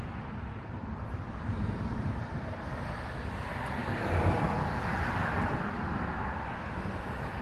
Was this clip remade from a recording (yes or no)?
no